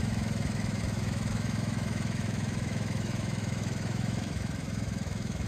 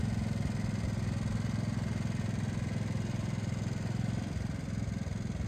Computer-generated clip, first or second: first